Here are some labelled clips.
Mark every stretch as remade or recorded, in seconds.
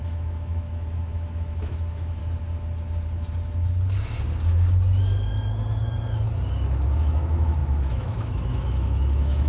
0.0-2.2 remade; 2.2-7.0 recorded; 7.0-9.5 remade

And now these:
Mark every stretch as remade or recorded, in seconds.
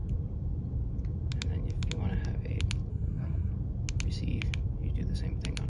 0.0-2.9 recorded; 2.9-3.5 remade; 3.5-5.7 recorded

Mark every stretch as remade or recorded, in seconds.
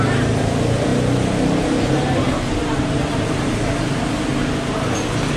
0.0-4.0 remade; 4.0-5.4 recorded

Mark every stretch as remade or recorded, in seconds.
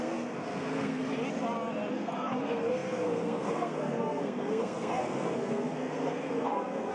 0.0-1.0 remade; 1.0-1.9 recorded; 1.9-6.9 remade